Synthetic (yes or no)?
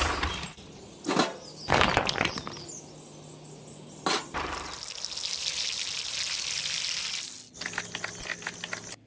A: no